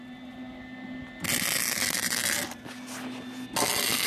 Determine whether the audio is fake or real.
real